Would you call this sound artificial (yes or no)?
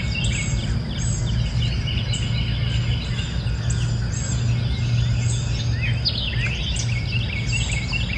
no